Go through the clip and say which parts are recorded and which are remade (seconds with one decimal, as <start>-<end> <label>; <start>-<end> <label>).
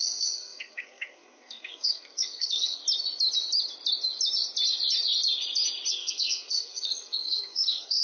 0.0-2.8 remade; 2.8-5.9 recorded; 5.9-8.0 remade